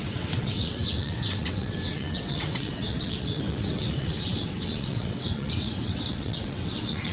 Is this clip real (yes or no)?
no